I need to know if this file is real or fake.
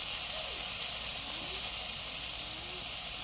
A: real